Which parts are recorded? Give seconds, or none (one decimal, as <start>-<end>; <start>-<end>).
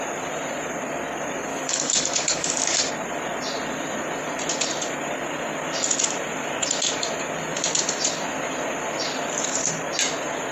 0.0-1.5; 2.9-10.5